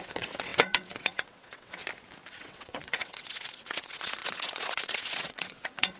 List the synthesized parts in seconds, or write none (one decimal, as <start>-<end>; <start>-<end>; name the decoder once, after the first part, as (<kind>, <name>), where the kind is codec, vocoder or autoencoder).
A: 0.0-1.8 (vocoder, WaveNeXt); 2.3-6.0